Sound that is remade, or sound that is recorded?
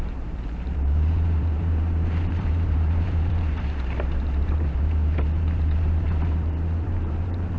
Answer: remade